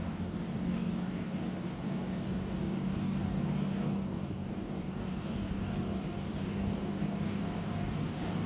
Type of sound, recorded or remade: remade